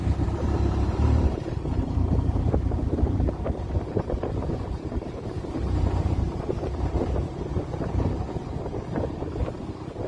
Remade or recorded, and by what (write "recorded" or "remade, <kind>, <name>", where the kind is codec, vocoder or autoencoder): remade, vocoder, BigVGAN v2